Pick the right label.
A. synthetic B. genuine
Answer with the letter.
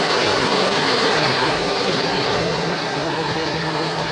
A